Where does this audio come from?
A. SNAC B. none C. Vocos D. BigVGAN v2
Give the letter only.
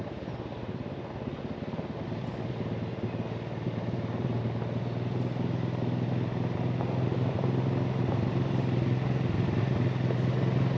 B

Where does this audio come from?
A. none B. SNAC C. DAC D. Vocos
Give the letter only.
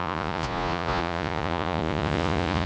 D